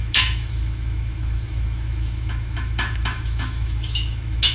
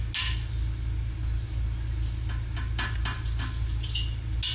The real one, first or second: second